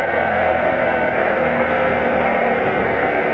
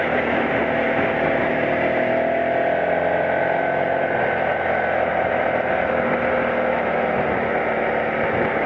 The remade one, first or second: first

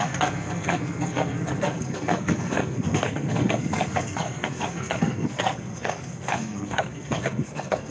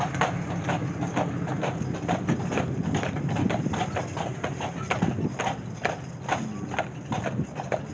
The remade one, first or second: first